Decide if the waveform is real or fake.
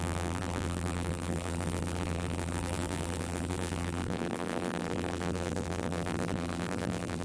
fake